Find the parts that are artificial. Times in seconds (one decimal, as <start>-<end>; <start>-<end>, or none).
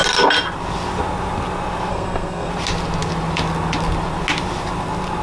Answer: 1.9-2.5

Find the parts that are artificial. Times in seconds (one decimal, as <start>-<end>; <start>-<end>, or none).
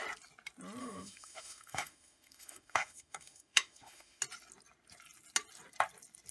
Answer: 0.8-4.2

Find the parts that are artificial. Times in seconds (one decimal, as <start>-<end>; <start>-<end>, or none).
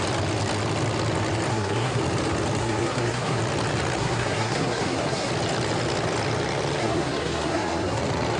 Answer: 1.5-2.0; 2.6-3.4; 4.0-5.3; 6.8-8.0